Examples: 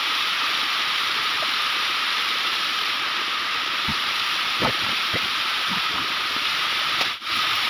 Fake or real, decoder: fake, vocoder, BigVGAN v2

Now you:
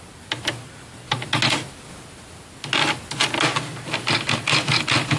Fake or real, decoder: real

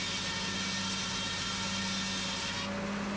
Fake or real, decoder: real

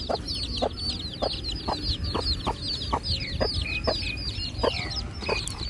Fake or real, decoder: real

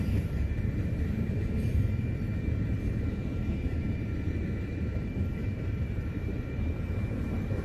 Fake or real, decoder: fake, vocoder, BigVGAN v2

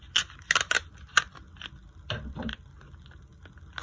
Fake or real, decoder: real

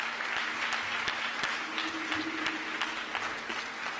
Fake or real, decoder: real